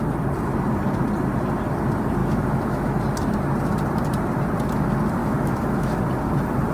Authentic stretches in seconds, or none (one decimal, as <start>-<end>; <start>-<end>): 0.0-2.2; 3.0-5.2; 6.0-6.7